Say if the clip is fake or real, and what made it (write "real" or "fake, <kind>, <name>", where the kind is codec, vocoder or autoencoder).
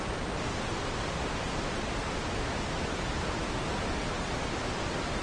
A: real